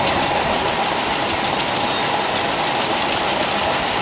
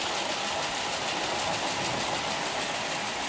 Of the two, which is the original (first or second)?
second